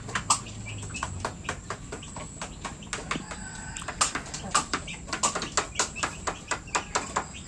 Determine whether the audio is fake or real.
real